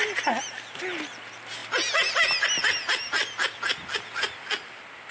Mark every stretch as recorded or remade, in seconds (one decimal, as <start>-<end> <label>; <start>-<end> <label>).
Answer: 0.0-2.6 recorded; 2.6-3.8 remade; 3.8-5.1 recorded